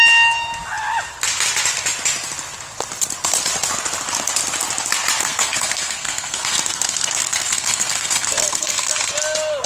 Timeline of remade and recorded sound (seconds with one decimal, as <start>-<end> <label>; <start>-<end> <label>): 0.0-5.2 recorded; 5.2-9.1 remade; 9.1-9.7 recorded